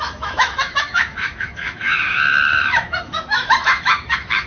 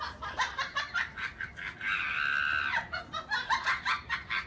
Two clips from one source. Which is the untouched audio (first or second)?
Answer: second